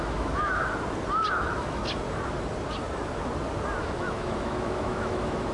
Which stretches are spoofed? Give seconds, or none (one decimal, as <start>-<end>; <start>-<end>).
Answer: 0.0-0.6; 1.3-1.8; 3.8-5.5